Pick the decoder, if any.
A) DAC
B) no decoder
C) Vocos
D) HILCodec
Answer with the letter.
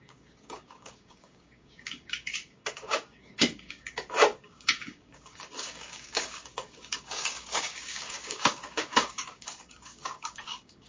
A